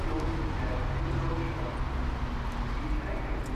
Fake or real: real